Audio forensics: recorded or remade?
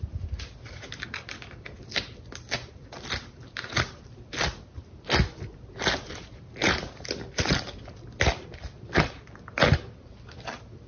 recorded